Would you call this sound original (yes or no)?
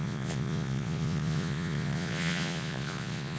no